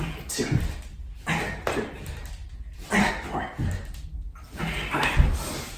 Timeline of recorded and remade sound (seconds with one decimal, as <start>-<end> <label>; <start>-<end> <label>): 0.0-5.8 recorded